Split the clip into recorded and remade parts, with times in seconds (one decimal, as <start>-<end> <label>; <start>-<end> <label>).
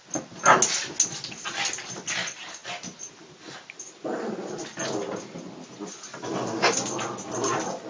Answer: 0.0-7.9 recorded